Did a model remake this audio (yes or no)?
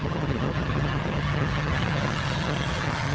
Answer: yes